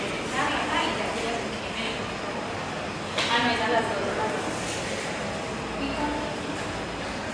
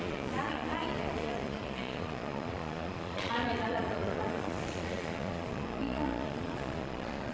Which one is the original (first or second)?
first